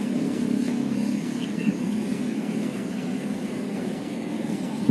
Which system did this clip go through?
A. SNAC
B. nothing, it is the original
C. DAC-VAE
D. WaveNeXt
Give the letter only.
A